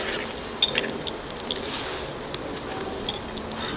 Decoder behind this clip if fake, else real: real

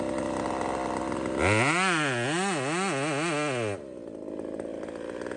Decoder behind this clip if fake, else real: real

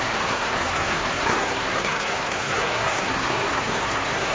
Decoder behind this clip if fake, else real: fake, codec, SNAC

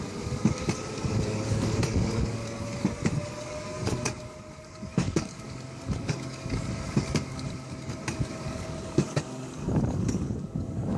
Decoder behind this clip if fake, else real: fake, codec, DAC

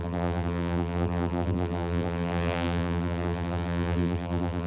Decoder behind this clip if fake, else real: fake, vocoder, BigVGAN v2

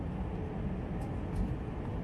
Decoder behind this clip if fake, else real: real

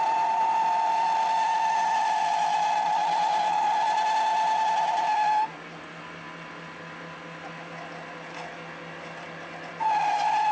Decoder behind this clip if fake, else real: real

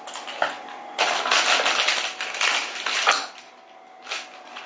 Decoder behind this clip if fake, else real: real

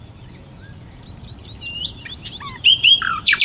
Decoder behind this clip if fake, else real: fake, vocoder, BigVGAN v2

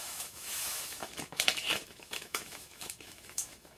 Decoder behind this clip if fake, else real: fake, autoencoder, DAC-VAE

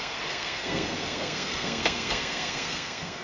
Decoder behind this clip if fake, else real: fake, codec, SNAC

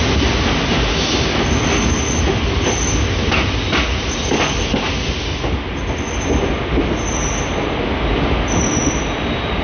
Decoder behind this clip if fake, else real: real